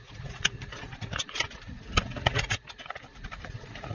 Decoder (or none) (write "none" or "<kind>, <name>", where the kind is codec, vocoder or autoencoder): vocoder, Vocos